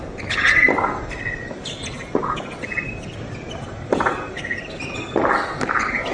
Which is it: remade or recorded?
recorded